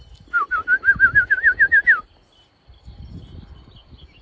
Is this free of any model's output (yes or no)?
yes